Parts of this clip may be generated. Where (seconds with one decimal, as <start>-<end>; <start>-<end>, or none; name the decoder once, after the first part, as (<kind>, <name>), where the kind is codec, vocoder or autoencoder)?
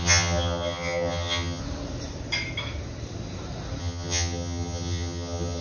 0.0-1.6 (vocoder, HiFi-GAN); 3.8-5.6